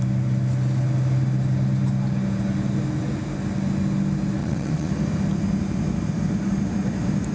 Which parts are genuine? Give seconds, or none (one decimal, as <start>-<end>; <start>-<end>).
0.0-4.4; 4.9-7.3